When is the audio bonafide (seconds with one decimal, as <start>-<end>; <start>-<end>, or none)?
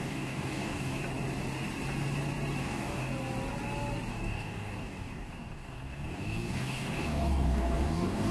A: 1.0-2.6; 3.1-4.1